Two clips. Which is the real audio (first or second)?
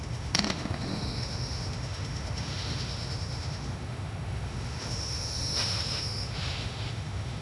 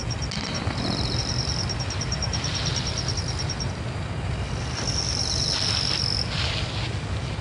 second